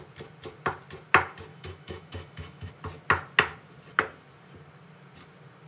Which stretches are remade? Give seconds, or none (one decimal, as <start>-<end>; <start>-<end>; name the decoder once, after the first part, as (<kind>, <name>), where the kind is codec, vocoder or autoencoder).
1.5-2.7 (autoencoder, DAC-VAE)